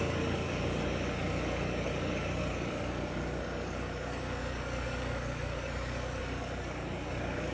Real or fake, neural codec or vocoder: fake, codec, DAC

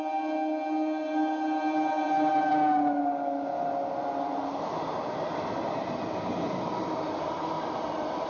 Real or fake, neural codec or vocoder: real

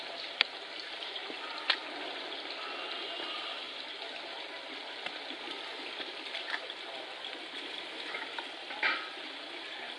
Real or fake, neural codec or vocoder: real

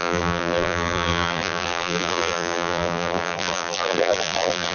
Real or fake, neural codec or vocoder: fake, vocoder, BigVGAN v2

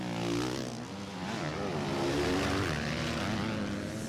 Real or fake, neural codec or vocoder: real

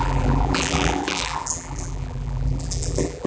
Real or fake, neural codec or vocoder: fake, vocoder, BigVGAN v2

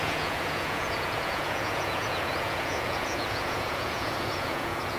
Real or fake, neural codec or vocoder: fake, vocoder, Vocos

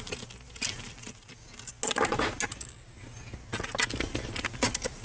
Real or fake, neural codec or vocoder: real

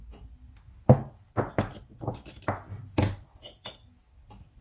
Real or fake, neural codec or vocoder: real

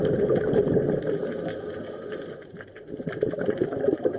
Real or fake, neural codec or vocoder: real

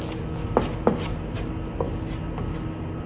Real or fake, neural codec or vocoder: real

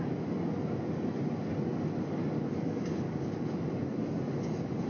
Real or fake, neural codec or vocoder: real